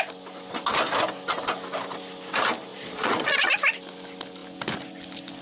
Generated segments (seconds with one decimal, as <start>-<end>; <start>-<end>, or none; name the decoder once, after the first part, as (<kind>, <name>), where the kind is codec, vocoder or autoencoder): 2.7-3.5 (vocoder, Vocos)